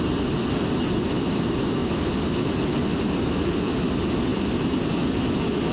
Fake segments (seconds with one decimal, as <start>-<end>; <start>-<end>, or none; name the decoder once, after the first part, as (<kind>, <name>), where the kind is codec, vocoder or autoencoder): 4.3-4.9 (vocoder, BigVGAN v2)